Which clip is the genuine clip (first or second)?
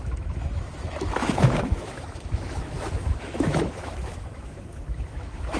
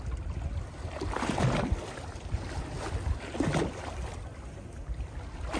second